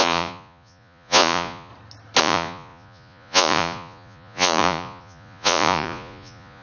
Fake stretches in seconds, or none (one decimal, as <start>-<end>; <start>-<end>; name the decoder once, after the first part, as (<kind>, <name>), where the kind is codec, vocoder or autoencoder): 0.0-1.7 (vocoder, Vocos); 2.2-6.6